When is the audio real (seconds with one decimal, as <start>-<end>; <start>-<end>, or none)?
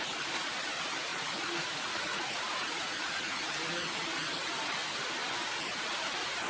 0.0-1.1; 3.5-6.5